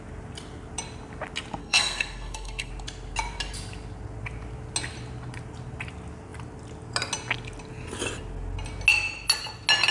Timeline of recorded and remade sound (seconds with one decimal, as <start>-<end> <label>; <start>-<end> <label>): 0.0-1.6 recorded; 1.6-2.7 remade; 2.7-9.9 recorded